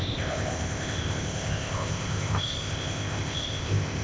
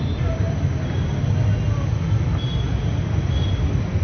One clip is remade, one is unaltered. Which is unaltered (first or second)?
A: second